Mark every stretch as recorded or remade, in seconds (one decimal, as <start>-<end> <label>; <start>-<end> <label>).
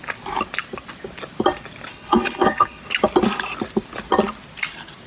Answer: 0.0-1.9 recorded; 1.9-2.8 remade; 2.8-5.1 recorded